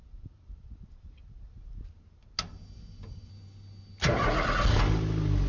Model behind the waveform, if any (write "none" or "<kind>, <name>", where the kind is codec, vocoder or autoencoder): none